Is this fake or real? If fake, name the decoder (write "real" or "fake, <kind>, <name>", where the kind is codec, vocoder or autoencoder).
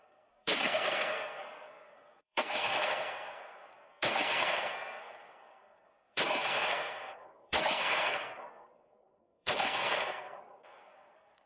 fake, codec, SNAC